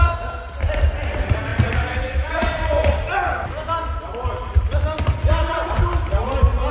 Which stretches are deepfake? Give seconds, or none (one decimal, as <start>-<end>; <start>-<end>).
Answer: none